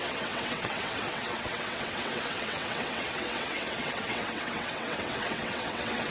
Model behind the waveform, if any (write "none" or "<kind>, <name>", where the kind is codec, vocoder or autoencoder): vocoder, WaveNeXt